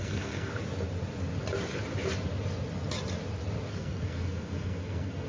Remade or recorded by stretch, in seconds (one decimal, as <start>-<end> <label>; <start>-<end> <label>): 0.0-0.5 remade; 0.5-3.7 recorded; 3.7-5.3 remade